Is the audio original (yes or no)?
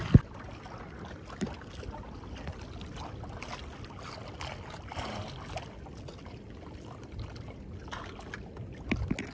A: yes